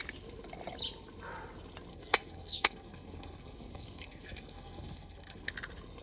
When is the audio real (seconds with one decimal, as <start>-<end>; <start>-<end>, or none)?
0.0-1.9; 5.5-6.0